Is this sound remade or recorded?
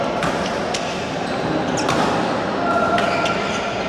recorded